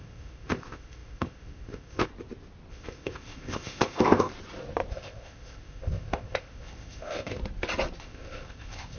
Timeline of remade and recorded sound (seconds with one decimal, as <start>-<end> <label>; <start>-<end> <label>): 0.0-2.1 remade; 2.1-2.7 recorded; 2.7-4.3 remade; 4.3-4.9 recorded; 4.9-7.4 remade; 7.4-8.0 recorded; 8.0-9.0 remade